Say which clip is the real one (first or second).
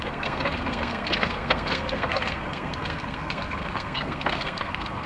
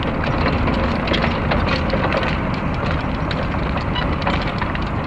second